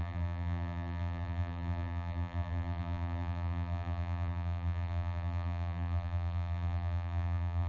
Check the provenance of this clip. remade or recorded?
remade